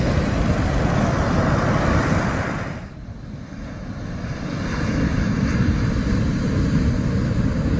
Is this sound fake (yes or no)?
no